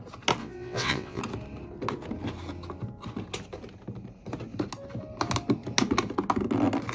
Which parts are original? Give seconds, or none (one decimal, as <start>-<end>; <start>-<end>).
0.0-0.4; 1.2-6.9